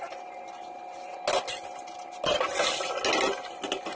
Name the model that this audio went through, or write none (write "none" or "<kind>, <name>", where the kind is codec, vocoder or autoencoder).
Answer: none